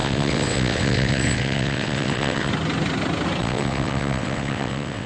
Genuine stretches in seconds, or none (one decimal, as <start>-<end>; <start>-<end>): 2.5-3.4